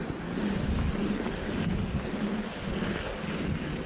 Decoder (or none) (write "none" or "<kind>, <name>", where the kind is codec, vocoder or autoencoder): none